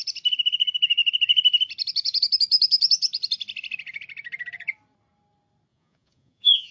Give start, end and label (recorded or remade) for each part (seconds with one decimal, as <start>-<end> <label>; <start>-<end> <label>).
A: 0.0-5.7 recorded; 5.7-6.7 remade